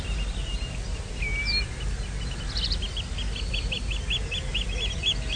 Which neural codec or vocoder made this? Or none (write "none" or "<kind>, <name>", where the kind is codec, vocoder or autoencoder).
none